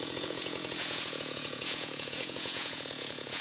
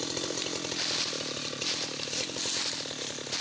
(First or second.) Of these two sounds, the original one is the second